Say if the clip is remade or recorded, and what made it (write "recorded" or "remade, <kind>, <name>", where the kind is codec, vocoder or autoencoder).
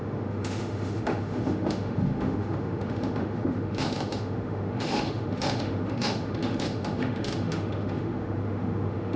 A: remade, autoencoder, DAC-VAE